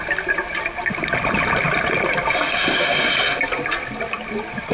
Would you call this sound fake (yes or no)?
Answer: no